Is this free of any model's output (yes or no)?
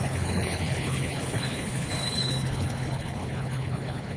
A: no